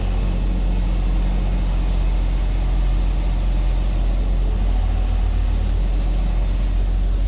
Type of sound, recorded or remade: recorded